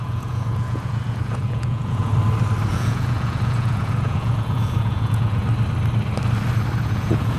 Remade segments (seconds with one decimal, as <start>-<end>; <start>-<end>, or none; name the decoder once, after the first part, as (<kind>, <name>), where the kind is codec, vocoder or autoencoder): 0.0-2.1 (vocoder, Vocos); 2.7-5.4; 6.8-7.4